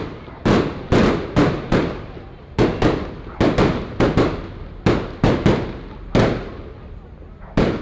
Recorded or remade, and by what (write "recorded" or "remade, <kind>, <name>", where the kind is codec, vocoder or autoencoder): recorded